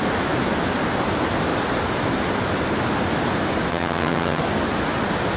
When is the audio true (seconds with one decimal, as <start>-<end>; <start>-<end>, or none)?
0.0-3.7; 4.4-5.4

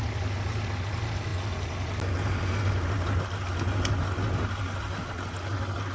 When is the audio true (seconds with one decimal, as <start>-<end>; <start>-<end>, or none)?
0.0-5.9

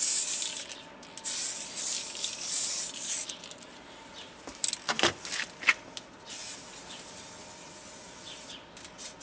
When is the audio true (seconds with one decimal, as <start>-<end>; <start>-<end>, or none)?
0.0-9.2